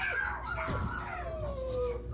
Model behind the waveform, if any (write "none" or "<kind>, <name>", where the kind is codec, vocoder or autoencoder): none